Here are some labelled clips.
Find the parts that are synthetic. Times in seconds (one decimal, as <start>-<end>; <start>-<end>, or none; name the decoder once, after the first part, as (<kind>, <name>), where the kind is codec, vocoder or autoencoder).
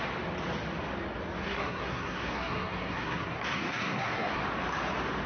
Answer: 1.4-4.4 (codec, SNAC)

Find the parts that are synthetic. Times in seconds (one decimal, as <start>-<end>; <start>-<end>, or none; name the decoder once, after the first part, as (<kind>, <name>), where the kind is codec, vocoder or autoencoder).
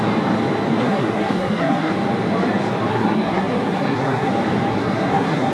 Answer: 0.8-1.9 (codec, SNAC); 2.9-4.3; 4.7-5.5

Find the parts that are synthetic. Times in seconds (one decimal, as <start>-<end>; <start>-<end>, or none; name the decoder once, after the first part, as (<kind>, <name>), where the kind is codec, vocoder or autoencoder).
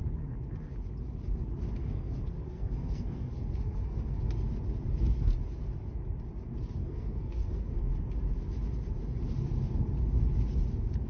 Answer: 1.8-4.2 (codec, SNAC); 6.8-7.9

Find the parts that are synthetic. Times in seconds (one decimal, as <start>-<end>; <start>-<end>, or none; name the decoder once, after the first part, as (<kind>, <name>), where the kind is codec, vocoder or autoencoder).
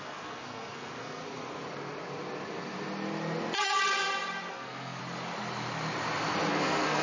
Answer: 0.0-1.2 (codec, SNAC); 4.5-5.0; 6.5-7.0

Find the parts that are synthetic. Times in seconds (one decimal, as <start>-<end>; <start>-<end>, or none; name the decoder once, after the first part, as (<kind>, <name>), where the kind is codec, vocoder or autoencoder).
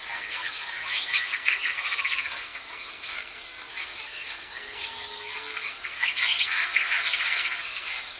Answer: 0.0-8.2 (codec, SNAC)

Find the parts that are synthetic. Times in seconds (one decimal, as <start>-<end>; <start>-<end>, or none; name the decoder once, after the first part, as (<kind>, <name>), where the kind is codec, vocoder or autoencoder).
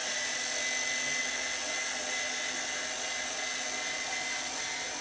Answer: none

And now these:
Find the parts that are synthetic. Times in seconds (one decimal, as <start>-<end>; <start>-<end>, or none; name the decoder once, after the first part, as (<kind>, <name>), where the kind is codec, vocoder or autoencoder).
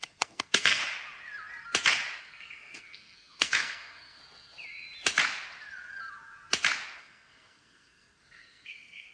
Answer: 0.0-0.8 (codec, SNAC); 2.2-4.2; 7.0-9.1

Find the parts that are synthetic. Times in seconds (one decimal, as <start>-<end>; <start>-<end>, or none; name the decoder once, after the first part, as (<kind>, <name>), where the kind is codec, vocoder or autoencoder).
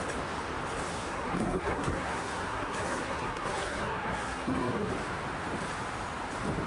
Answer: 0.9-4.9 (codec, SNAC)